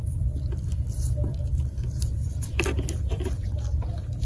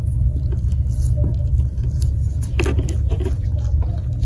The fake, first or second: first